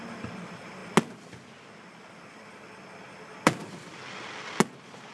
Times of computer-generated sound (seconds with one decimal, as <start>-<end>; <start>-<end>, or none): none